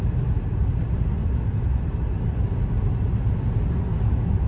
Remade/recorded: recorded